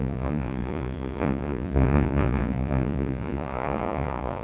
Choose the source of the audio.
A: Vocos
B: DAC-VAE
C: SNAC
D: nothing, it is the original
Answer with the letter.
A